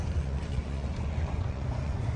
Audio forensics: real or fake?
fake